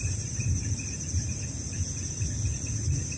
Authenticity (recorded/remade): recorded